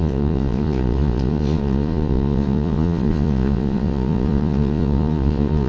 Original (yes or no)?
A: no